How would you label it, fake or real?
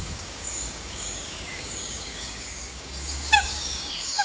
fake